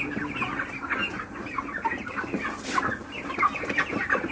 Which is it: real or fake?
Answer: real